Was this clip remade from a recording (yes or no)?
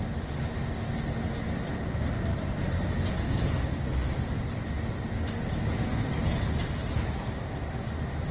no